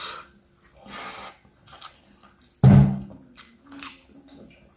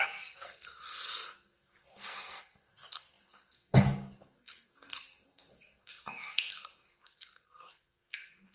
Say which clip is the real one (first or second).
first